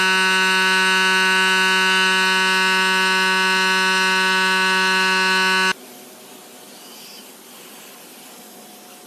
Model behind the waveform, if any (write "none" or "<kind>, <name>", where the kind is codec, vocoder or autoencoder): none